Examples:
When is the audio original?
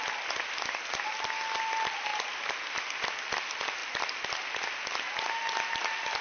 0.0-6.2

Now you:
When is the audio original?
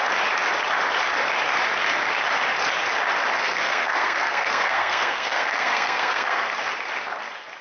0.0-3.4; 6.5-7.6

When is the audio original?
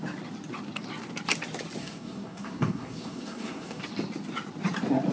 0.0-1.8; 3.8-5.1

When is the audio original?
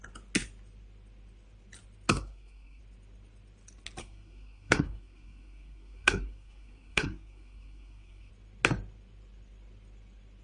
0.0-2.1; 2.8-4.0; 8.3-10.4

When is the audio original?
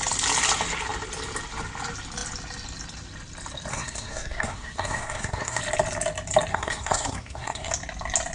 0.0-3.7; 5.6-6.5; 7.7-8.3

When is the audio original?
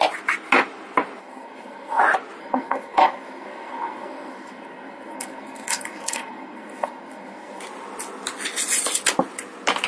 0.0-1.2; 2.0-2.4; 7.6-9.9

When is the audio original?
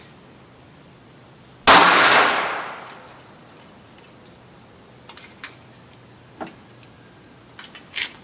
0.0-8.2